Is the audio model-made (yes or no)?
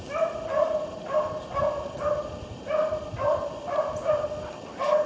no